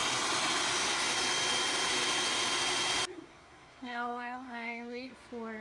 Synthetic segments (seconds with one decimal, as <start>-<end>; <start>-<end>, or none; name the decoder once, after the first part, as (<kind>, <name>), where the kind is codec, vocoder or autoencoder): 3.1-5.1 (codec, SNAC)